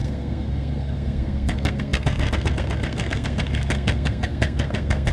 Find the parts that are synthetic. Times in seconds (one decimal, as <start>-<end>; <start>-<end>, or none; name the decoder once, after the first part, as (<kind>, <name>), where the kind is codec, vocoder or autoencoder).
0.0-5.1 (codec, SNAC)